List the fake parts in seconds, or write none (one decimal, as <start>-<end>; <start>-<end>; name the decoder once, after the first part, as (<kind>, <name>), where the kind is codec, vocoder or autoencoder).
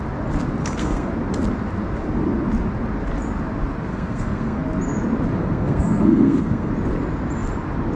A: 0.6-1.1 (codec, SNAC); 3.9-4.6; 5.4-6.7